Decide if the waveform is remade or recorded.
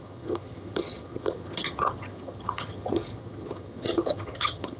remade